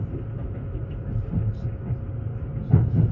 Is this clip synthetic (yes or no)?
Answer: no